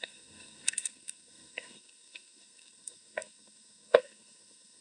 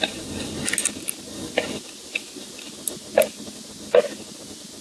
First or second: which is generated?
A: first